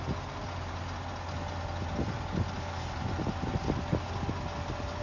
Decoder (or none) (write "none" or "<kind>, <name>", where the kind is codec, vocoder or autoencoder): none